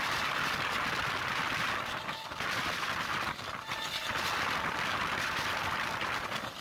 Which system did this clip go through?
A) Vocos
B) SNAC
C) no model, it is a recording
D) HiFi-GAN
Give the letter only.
C